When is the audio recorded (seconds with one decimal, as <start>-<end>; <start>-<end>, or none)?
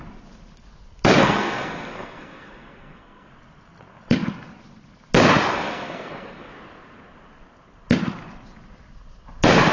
0.0-1.2; 3.3-5.5; 6.5-9.7